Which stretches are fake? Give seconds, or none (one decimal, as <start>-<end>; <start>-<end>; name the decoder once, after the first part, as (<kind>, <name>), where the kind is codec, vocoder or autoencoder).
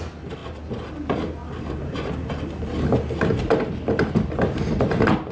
none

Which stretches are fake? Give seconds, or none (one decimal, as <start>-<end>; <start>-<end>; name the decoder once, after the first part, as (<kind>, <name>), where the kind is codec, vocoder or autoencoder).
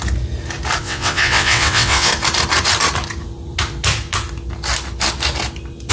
0.8-2.1 (vocoder, WaveNeXt)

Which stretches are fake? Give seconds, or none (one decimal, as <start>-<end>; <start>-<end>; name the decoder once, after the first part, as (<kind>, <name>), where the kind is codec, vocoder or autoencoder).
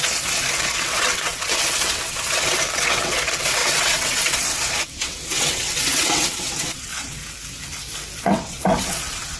0.0-7.2 (vocoder, WaveNeXt); 8.2-9.4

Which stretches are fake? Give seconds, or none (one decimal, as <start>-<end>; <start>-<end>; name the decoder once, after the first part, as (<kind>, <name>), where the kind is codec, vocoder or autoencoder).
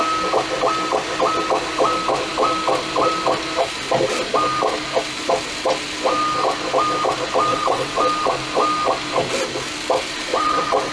7.5-8.0 (vocoder, WaveNeXt); 10.3-10.9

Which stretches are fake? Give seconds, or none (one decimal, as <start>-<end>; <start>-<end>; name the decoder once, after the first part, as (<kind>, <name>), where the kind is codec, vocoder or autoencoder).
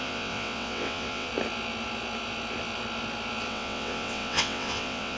0.0-1.3 (vocoder, WaveNeXt); 3.5-5.2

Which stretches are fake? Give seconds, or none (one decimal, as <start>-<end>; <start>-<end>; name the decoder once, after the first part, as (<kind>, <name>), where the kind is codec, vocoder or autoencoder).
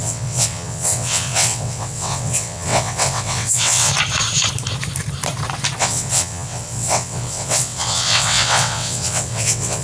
0.0-3.9 (vocoder, WaveNeXt); 5.8-9.8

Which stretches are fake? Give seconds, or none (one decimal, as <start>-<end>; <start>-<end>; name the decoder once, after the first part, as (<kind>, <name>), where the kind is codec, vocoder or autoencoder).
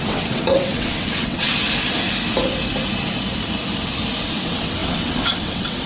0.0-1.5 (vocoder, WaveNeXt); 4.3-5.9